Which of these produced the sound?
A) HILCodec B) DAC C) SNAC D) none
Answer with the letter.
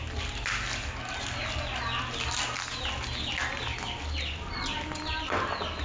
D